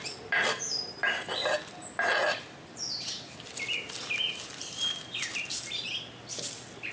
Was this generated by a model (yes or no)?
no